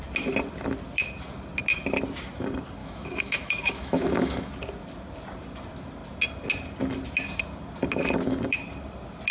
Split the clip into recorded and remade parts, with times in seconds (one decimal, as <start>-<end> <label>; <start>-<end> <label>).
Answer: 0.0-2.8 recorded; 2.8-4.5 remade; 4.5-9.3 recorded